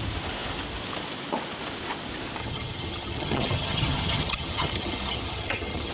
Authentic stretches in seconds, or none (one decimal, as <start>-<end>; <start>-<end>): 0.0-2.4